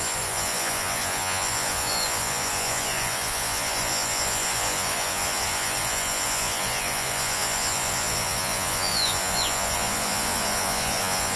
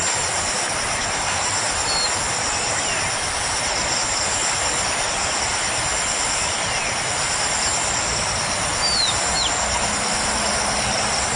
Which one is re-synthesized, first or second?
first